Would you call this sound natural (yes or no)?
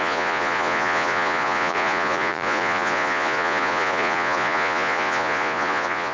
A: no